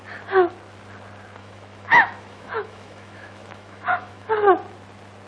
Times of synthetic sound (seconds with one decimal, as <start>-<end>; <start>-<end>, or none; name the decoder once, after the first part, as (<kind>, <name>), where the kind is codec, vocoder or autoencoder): 1.4-4.3 (autoencoder, DAC-VAE)